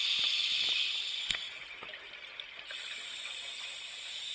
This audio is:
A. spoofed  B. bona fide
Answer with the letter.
B